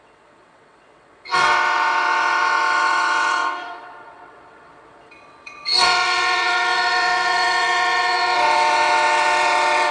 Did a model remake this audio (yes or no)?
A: yes